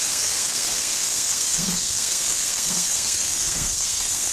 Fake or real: fake